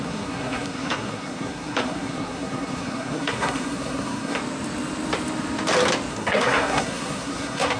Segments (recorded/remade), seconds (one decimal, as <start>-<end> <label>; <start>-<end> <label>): 0.0-4.4 remade; 4.4-6.1 recorded; 6.1-7.8 remade